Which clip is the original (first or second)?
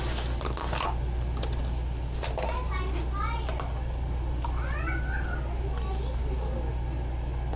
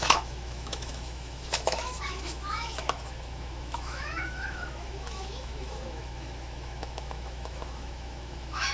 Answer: first